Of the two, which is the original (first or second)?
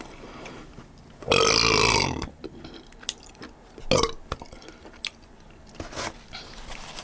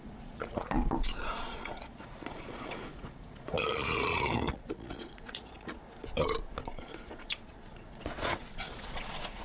first